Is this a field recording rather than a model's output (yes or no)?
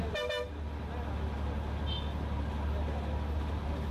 yes